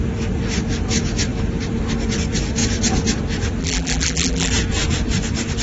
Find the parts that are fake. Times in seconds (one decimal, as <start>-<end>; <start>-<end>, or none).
3.6-4.5